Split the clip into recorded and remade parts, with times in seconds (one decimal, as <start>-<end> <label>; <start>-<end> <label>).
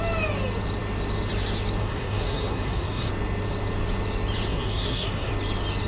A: 0.0-1.8 recorded; 1.8-3.1 remade; 3.1-4.5 recorded; 4.5-5.3 remade; 5.3-5.9 recorded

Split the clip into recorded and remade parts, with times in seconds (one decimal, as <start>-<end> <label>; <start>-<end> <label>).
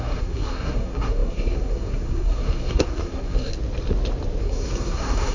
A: 0.0-3.5 remade; 3.5-4.4 recorded; 4.4-5.3 remade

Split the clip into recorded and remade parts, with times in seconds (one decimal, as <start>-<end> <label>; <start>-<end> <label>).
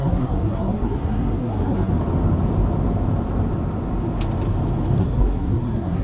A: 0.0-1.9 remade; 1.9-5.0 recorded; 5.0-6.0 remade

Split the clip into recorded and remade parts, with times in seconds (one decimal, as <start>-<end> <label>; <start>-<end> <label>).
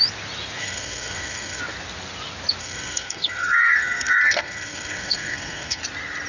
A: 0.0-0.6 recorded; 0.6-1.6 remade; 1.6-2.6 recorded; 2.6-5.8 remade; 5.8-6.3 recorded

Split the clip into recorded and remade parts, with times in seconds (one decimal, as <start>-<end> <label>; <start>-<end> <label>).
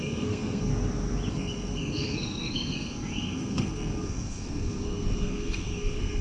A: 0.0-0.7 remade; 0.7-1.3 recorded; 1.3-6.2 remade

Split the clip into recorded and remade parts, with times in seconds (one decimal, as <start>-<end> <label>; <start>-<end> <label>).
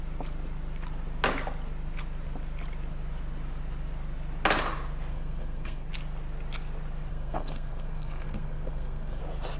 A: 0.0-5.1 recorded; 5.1-5.9 remade; 5.9-7.1 recorded; 7.1-9.2 remade; 9.2-9.6 recorded